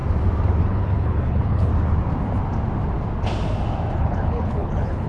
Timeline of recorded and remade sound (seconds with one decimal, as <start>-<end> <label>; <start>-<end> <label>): 0.0-0.6 recorded; 0.6-1.7 remade; 1.7-4.0 recorded; 4.0-5.1 remade